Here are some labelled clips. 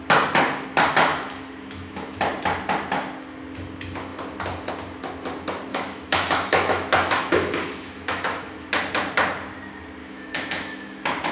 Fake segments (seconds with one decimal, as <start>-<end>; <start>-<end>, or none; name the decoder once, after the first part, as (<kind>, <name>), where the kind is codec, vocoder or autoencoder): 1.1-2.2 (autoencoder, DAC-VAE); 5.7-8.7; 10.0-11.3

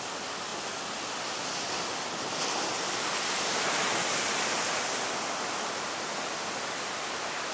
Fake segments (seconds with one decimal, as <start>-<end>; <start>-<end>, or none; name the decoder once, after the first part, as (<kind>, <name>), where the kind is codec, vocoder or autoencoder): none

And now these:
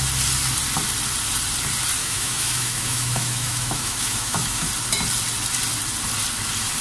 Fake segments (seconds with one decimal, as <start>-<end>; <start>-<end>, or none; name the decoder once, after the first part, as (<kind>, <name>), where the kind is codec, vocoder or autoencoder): 2.0-4.7 (autoencoder, DAC-VAE)